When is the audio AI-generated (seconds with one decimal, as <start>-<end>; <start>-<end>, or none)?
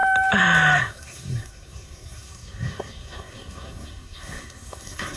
0.8-5.2